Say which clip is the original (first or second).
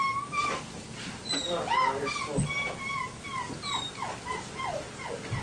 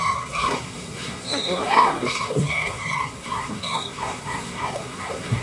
first